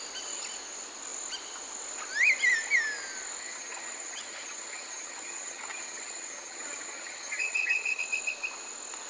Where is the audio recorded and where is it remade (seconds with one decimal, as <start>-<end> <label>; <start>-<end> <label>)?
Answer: 0.0-3.4 recorded; 3.4-8.0 remade; 8.0-9.1 recorded